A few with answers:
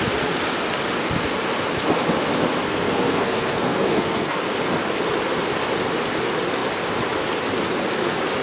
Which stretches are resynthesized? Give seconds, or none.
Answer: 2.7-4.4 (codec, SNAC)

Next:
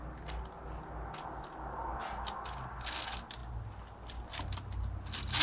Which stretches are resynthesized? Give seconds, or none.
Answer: none

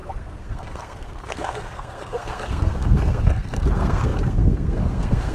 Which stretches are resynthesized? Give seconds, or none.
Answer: 0.0-5.3 (codec, SNAC)

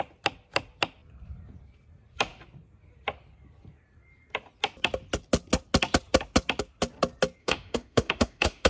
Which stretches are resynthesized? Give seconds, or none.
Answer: 7.4-8.7 (autoencoder, DAC-VAE)

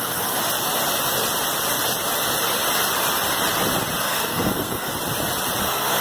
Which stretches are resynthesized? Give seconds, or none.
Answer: 0.0-0.4 (codec, SNAC); 4.0-4.9; 5.6-6.0